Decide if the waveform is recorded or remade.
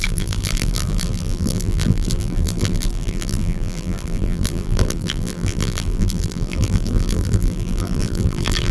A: remade